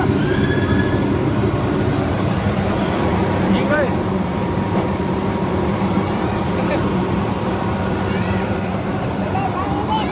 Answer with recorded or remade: remade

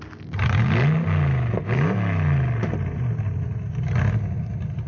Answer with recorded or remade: recorded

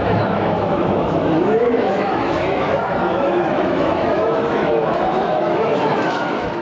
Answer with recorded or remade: remade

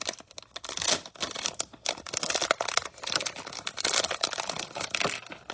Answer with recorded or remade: recorded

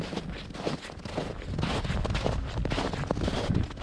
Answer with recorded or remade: recorded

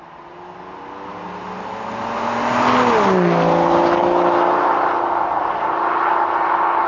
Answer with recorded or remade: recorded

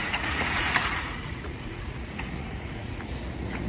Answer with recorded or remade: remade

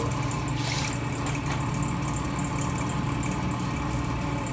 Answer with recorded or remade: recorded